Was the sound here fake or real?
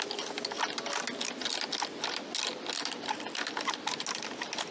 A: real